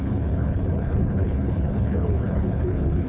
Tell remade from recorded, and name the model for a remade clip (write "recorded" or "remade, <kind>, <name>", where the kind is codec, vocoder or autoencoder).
remade, codec, HILCodec